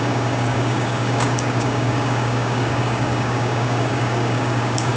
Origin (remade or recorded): remade